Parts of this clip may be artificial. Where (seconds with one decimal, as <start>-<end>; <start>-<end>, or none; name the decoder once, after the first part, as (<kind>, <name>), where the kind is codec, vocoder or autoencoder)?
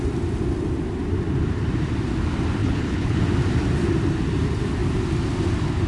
2.6-3.2 (codec, HILCodec)